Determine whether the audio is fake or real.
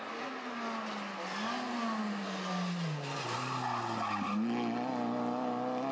real